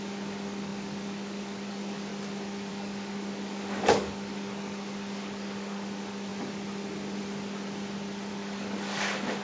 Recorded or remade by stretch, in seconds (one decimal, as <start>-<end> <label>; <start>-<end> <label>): 0.0-2.1 remade; 2.1-2.7 recorded; 2.7-6.3 remade; 6.3-8.3 recorded; 8.3-9.4 remade